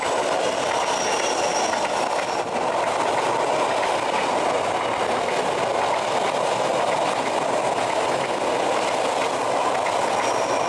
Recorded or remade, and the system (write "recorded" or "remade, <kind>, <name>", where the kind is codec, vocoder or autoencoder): recorded